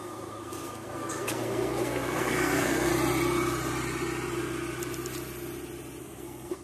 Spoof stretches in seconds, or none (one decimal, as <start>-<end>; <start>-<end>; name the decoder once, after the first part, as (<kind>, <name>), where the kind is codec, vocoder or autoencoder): 0.0-2.9 (codec, SNAC); 6.0-6.6